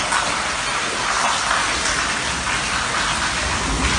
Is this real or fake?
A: real